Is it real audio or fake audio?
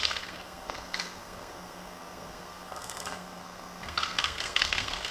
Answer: fake